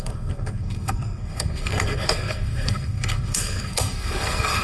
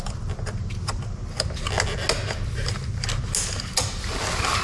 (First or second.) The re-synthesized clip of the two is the first